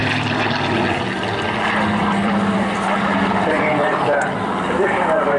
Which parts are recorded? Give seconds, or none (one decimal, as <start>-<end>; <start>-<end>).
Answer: 1.0-2.0; 5.0-5.4